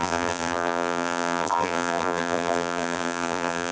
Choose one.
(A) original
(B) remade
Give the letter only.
B